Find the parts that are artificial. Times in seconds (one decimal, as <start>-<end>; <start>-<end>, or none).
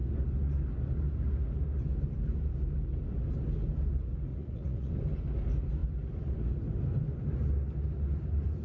4.3-4.9